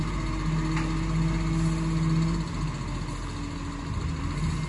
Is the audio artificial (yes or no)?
no